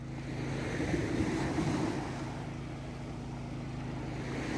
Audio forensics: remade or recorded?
recorded